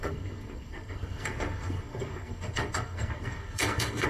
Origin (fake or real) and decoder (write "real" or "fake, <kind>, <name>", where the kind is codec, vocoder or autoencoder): fake, codec, SNAC